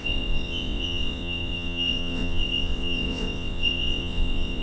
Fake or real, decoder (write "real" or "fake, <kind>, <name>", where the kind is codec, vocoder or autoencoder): fake, vocoder, WaveNeXt